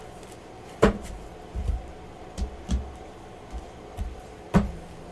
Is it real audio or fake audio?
real